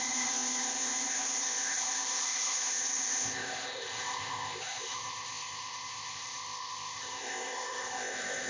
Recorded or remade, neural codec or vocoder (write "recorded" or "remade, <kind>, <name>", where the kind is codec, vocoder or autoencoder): remade, codec, ZipCodec